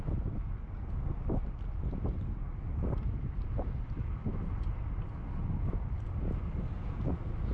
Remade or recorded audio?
recorded